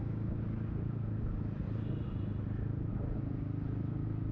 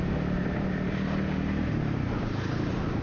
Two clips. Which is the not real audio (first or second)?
second